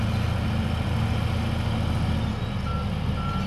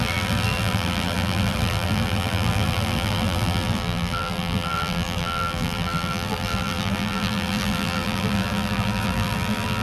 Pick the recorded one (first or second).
first